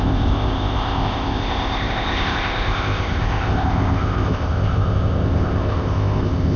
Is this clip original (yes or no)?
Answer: no